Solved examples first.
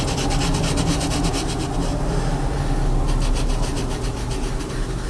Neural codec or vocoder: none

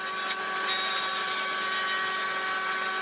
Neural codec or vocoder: none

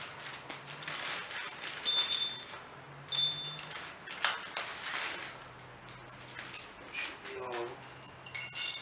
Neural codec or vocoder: none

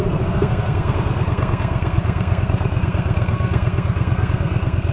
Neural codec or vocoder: codec, SNAC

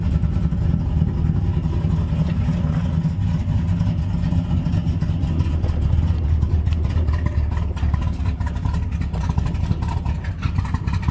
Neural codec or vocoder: none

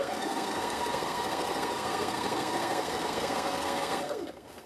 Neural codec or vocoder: codec, SNAC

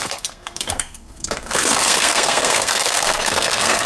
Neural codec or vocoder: codec, SNAC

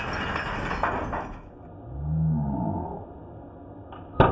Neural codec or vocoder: none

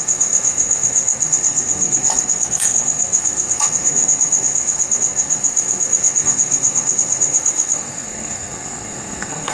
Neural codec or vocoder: codec, SNAC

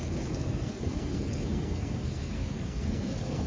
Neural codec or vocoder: codec, SNAC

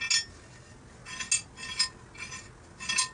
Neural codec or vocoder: none